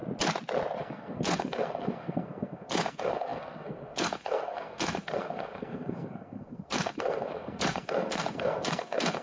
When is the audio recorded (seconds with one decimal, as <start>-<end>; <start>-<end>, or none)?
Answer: 0.0-0.8